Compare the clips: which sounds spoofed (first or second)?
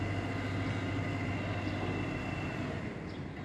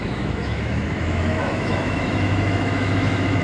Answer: second